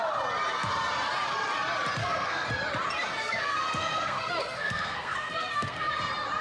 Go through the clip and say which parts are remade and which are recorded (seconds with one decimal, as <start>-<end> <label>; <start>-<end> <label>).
0.0-2.0 recorded; 2.0-2.5 remade; 2.5-3.2 recorded; 3.2-5.9 remade; 5.9-6.4 recorded